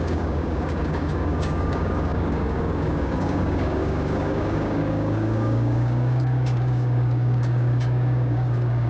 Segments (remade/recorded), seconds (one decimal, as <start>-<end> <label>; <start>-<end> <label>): 0.0-8.9 remade

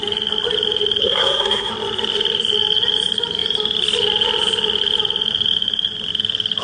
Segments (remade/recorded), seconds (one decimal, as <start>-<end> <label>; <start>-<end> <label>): 0.0-1.0 recorded; 1.0-1.7 remade; 1.7-6.6 recorded

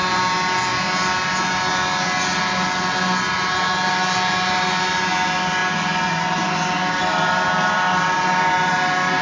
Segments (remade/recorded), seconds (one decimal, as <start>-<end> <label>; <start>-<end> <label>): 0.0-9.2 recorded

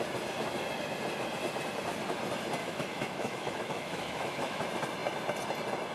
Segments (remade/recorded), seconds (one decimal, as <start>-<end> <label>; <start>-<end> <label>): 0.0-2.6 recorded; 2.6-4.6 remade; 4.6-5.9 recorded

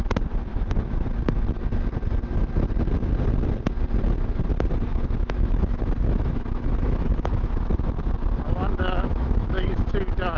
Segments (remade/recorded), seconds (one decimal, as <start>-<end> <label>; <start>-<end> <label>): 0.0-0.5 recorded; 0.5-1.1 remade; 1.1-4.9 recorded; 4.9-8.1 remade; 8.1-8.6 recorded; 8.6-9.8 remade; 9.8-10.4 recorded

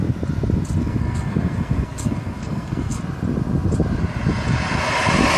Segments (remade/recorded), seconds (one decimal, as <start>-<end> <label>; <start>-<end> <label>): 0.0-0.8 recorded; 0.8-3.0 remade; 3.0-5.4 recorded

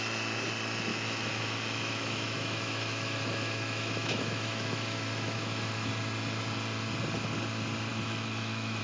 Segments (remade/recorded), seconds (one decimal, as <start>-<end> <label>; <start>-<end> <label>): 0.0-0.9 recorded; 0.9-5.9 remade; 5.9-7.9 recorded; 7.9-8.8 remade